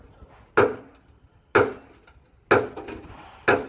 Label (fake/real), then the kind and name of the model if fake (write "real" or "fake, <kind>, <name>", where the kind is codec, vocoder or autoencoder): real